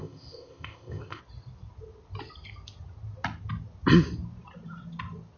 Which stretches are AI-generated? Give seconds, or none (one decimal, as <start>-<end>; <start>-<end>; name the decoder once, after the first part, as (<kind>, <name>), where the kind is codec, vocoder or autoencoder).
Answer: 0.0-1.2 (codec, ZipCodec)